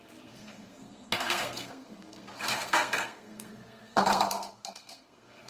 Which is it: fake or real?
fake